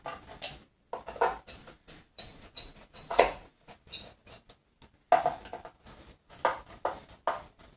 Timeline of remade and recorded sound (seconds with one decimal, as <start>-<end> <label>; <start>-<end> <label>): 0.0-1.6 recorded; 1.6-3.7 remade; 3.7-7.8 recorded